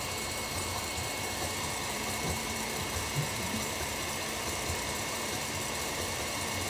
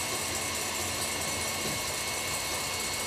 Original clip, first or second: second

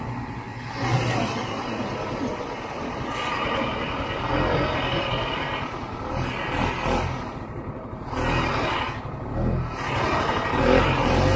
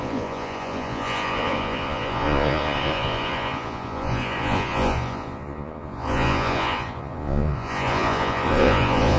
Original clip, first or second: first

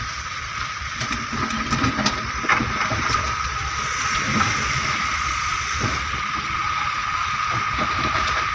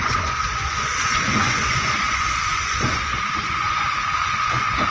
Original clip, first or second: first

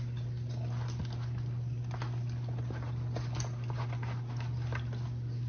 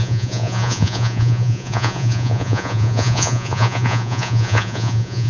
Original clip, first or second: first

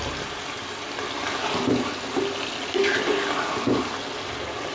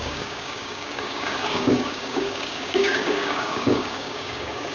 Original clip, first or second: first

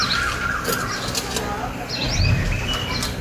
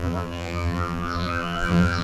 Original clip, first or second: first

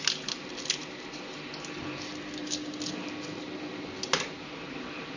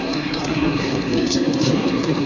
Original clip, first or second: first